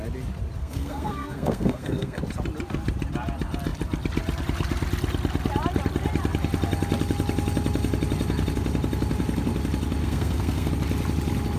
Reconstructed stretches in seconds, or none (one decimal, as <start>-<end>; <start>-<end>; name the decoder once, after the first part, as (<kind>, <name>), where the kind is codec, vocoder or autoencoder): 0.6-2.2 (codec, SNAC); 10.0-10.7